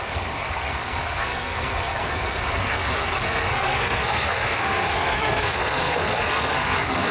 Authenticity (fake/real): fake